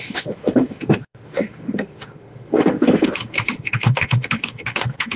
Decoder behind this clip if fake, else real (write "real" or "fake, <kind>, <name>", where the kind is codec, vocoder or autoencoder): fake, autoencoder, DAC-VAE